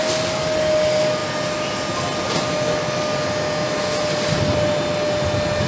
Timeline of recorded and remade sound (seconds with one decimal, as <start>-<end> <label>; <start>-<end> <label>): 0.0-5.7 recorded